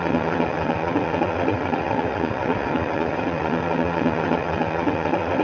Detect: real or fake fake